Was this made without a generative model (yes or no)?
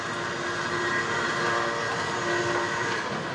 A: yes